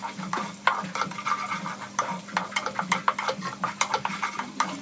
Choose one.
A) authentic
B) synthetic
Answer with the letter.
A